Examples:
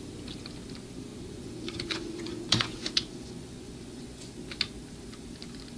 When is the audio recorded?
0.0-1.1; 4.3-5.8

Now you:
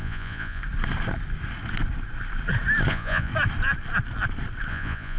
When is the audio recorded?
0.6-2.9; 3.3-4.7

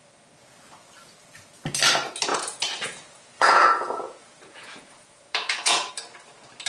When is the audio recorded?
0.0-2.3; 5.9-6.7

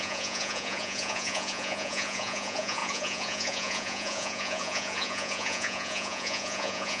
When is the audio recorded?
none

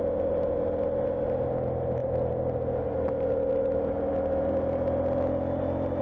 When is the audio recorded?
0.0-6.0

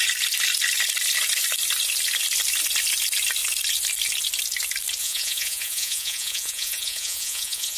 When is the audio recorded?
0.0-5.0

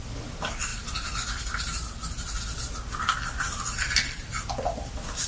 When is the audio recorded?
0.0-5.3